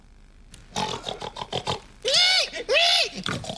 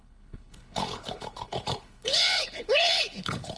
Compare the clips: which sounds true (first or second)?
first